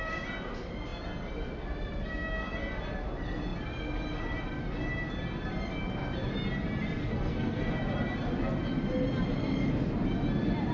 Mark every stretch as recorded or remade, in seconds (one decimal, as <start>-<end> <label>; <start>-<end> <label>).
0.0-7.0 recorded; 7.0-7.7 remade; 7.7-10.7 recorded